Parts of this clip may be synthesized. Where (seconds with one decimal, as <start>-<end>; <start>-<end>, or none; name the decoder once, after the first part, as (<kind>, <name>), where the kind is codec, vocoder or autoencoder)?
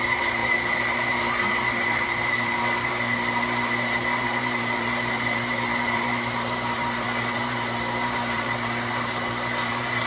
0.0-10.1 (vocoder, BigVGAN v2)